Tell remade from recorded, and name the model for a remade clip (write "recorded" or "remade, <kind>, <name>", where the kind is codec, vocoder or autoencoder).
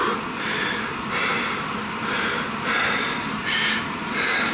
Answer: remade, vocoder, BigVGAN v2